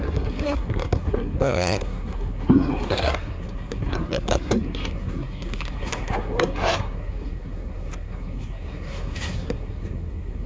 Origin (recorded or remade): remade